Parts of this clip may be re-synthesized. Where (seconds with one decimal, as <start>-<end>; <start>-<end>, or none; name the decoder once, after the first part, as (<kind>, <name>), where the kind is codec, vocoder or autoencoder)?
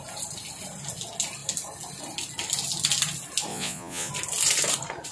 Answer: 3.5-4.1 (vocoder, Vocos)